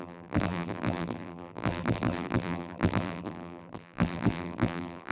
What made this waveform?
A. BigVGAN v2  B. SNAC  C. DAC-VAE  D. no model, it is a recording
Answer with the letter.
A